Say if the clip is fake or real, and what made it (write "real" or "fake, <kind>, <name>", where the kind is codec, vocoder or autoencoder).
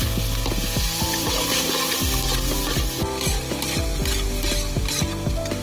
real